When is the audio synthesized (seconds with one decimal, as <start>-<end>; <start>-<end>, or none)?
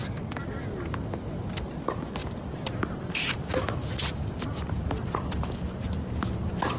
2.2-6.3